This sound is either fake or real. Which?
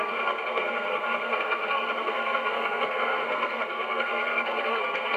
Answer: fake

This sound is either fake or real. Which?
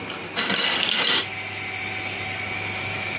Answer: real